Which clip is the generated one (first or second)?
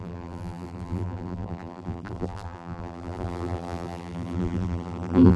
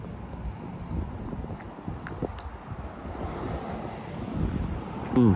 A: first